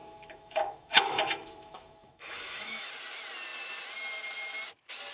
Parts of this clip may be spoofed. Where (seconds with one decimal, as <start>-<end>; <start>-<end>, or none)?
0.0-2.9

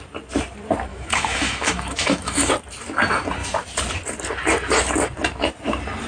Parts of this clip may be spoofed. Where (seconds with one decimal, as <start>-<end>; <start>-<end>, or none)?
0.9-2.5

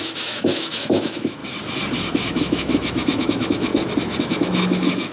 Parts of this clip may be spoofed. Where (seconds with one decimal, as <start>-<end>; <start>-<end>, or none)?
0.0-1.4; 2.2-3.7; 4.2-5.1